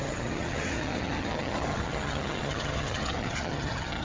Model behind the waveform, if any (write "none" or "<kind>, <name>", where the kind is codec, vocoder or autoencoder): vocoder, HiFi-GAN